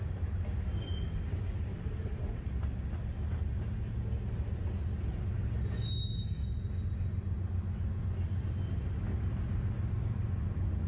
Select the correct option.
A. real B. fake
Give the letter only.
A